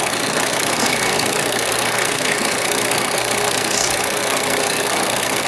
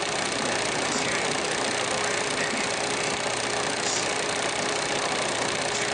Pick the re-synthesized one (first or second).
first